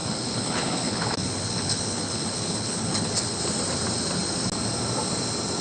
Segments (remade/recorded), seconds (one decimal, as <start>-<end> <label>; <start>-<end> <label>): 0.0-3.4 remade; 3.4-5.6 recorded